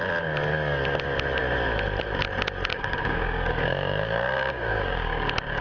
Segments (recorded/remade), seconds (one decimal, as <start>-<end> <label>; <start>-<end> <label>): 0.0-2.7 recorded; 2.7-5.6 remade